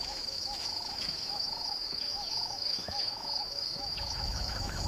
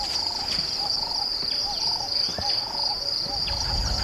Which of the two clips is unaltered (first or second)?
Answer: second